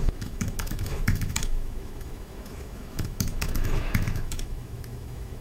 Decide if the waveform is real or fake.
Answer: fake